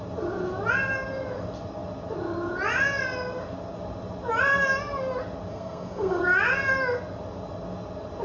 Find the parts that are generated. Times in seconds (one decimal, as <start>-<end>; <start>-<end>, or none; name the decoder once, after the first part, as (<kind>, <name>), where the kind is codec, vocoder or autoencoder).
5.5-6.2 (codec, SNAC)